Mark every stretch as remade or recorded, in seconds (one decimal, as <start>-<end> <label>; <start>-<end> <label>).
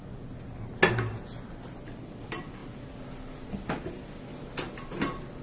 0.0-5.4 recorded